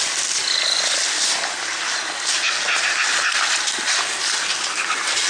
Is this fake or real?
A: real